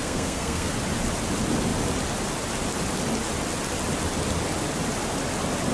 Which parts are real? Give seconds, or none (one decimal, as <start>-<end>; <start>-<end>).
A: 0.7-5.7